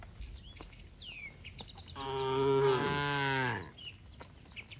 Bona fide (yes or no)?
yes